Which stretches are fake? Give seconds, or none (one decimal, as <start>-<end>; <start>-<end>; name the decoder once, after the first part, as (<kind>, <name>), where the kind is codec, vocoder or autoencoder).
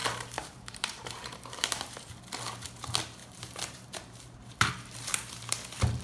0.0-1.9 (vocoder, BigVGAN v2); 3.2-4.7